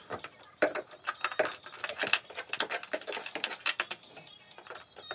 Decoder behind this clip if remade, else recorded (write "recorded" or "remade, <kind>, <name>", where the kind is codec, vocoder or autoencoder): remade, vocoder, BigVGAN v2